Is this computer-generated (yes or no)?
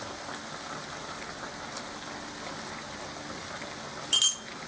no